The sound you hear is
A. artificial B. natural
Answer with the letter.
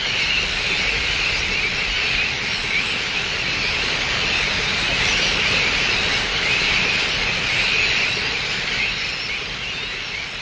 B